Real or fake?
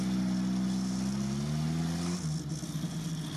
real